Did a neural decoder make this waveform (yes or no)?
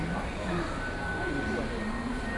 no